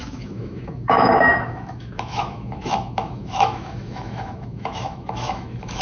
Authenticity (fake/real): fake